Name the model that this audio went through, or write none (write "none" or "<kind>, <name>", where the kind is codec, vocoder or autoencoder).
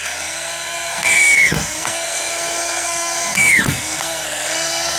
codec, SNAC